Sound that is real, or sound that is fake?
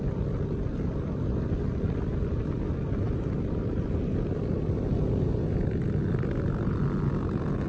real